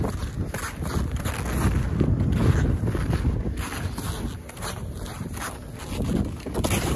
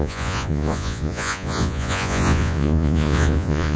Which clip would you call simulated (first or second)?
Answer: second